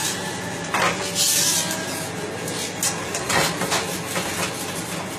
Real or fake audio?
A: real